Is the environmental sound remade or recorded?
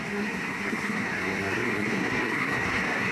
remade